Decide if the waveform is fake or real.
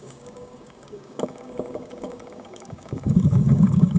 fake